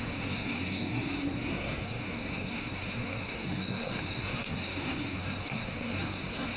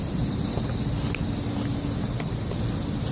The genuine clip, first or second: second